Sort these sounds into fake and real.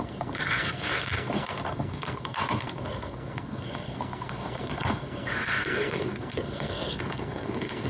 fake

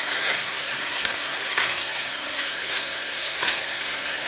fake